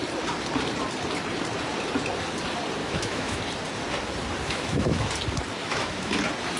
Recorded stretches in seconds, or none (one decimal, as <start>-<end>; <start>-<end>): 0.0-2.8; 3.4-4.4; 5.1-5.6; 6.1-6.6